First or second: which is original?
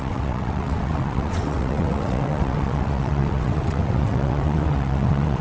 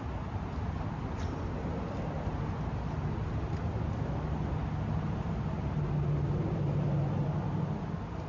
second